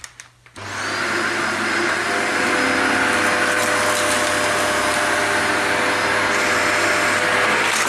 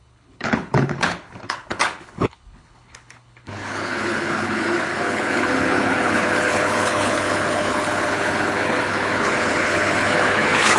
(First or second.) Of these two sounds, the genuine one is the first